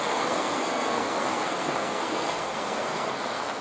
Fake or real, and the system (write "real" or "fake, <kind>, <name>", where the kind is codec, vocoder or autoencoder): fake, codec, SNAC